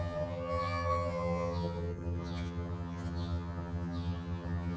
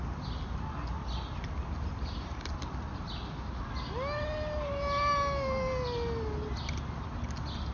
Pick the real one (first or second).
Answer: second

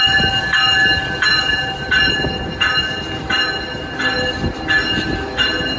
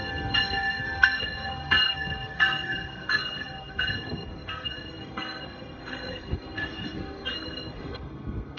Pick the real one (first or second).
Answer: first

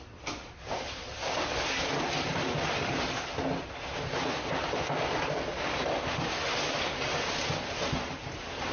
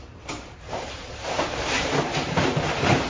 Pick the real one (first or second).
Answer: first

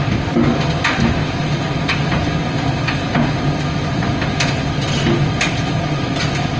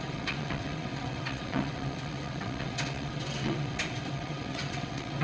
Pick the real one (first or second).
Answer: first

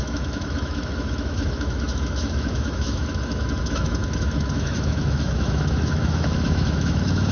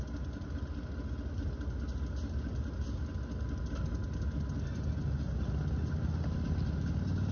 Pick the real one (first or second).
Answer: second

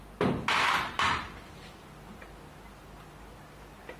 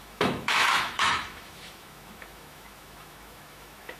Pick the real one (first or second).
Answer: first